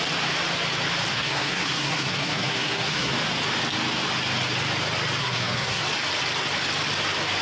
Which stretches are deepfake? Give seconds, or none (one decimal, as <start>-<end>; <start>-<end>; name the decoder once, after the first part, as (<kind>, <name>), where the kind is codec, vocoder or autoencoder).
1.1-3.1 (codec, SNAC); 5.2-5.8